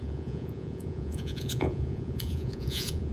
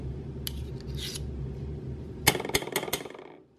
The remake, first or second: first